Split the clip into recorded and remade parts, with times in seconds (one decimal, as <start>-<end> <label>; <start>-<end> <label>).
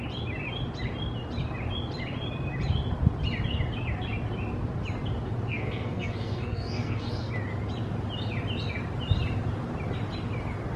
0.0-5.5 recorded; 5.5-7.3 remade; 7.3-10.8 recorded